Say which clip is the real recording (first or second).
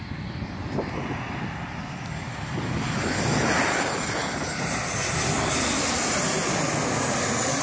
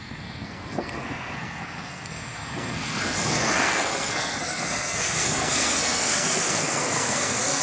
first